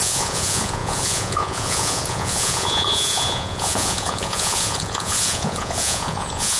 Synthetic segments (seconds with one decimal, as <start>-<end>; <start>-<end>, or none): 0.0-6.6